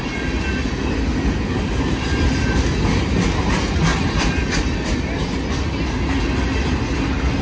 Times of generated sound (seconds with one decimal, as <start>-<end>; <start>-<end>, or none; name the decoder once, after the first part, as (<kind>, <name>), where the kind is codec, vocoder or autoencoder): none